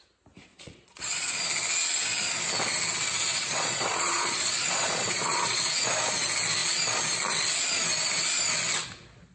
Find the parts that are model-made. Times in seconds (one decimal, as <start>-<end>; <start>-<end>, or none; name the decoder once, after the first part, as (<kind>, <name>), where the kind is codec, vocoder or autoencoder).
0.5-1.4 (vocoder, Vocos); 3.3-5.7